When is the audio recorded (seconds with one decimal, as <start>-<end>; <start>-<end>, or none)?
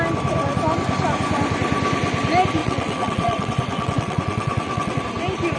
0.0-2.6; 5.0-5.6